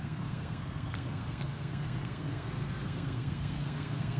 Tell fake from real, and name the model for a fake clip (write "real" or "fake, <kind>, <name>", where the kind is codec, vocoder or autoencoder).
fake, codec, SNAC